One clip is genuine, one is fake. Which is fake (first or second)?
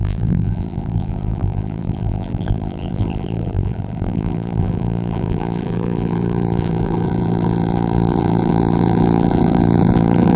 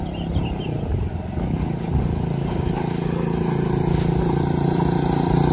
first